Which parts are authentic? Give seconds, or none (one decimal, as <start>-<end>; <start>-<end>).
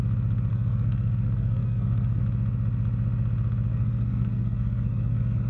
0.0-0.5; 2.2-3.7